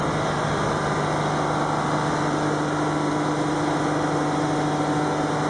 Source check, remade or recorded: recorded